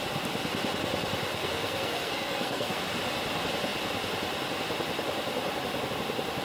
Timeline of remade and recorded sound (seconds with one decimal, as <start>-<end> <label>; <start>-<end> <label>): 0.0-1.3 recorded; 1.3-2.8 remade; 2.8-6.4 recorded